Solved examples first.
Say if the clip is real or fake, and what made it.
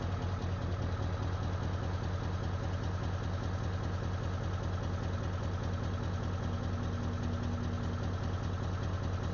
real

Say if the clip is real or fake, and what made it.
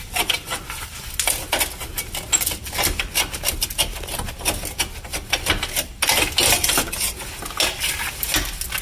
real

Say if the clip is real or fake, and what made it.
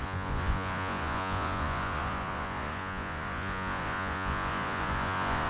fake, vocoder, Vocos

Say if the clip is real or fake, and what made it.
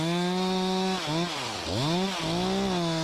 real